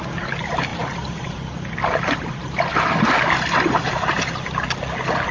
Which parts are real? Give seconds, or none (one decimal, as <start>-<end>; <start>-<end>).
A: 0.0-0.7; 3.9-5.3